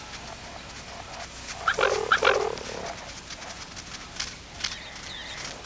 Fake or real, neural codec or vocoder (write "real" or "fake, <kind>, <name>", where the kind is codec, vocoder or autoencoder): real